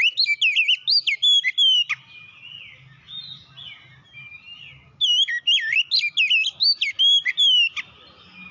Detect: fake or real real